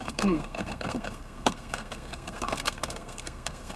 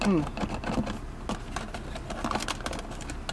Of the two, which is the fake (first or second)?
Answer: first